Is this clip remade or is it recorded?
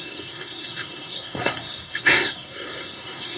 remade